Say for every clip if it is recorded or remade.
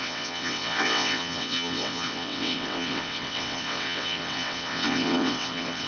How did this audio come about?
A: remade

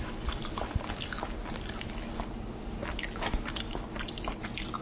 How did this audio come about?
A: recorded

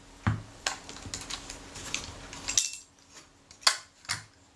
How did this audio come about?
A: recorded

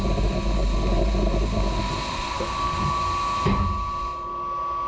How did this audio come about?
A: recorded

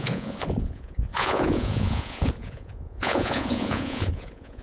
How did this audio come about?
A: remade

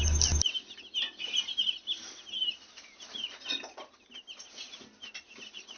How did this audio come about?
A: recorded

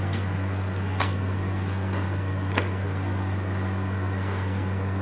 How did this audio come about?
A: remade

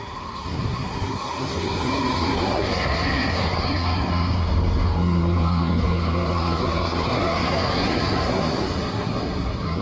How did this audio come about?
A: remade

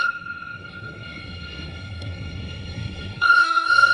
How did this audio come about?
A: remade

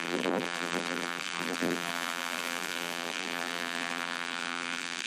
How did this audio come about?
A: remade